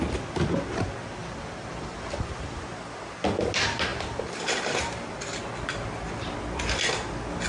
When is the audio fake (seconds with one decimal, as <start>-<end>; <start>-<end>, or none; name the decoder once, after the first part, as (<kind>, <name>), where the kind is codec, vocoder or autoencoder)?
1.2-2.4 (vocoder, BigVGAN v2); 3.9-5.4